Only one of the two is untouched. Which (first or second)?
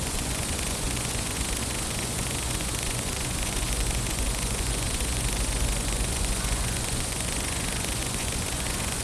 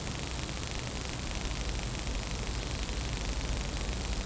second